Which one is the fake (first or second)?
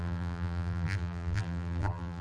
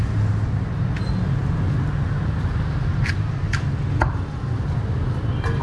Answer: first